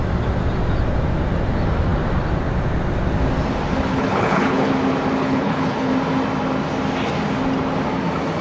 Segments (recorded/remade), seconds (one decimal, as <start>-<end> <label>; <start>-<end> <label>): 0.0-3.9 recorded; 3.9-4.7 remade; 4.7-5.2 recorded; 5.2-5.9 remade; 5.9-8.4 recorded